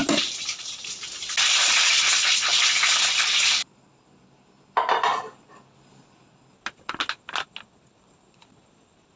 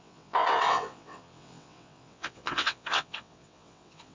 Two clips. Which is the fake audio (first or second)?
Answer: second